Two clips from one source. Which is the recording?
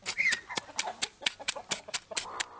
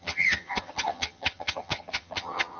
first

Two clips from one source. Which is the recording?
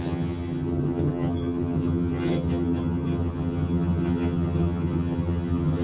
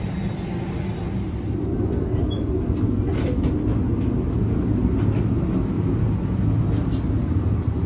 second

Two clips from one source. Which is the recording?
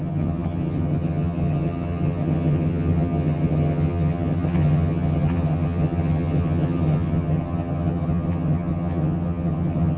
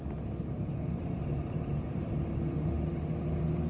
second